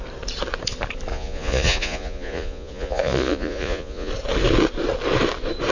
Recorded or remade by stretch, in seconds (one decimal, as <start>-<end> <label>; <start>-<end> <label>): 0.0-1.1 recorded; 1.1-4.1 remade; 4.1-5.7 recorded